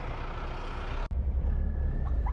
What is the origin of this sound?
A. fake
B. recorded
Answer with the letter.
B